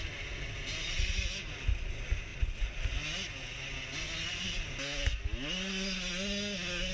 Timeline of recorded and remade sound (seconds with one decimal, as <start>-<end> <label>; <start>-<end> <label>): 0.0-6.9 recorded